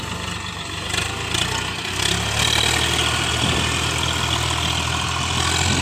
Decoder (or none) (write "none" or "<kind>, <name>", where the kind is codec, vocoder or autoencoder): none